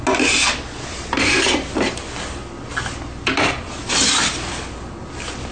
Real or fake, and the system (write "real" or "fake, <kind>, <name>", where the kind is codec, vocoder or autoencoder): real